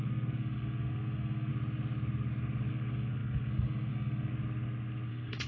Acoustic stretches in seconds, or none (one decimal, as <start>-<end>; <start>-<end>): 1.5-2.7; 4.3-5.1